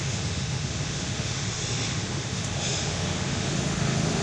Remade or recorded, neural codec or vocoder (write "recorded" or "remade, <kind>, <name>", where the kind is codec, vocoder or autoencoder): remade, autoencoder, DAC-VAE